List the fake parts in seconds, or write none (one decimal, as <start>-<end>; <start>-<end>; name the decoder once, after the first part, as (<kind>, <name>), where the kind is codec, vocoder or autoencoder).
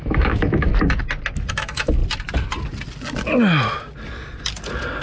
0.0-0.7 (autoencoder, DAC-VAE); 1.5-2.0